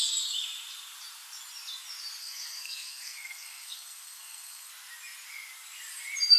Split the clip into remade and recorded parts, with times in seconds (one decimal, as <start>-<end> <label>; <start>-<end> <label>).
0.0-2.2 recorded; 2.2-4.7 remade; 4.7-6.4 recorded